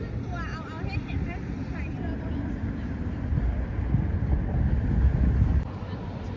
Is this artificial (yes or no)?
no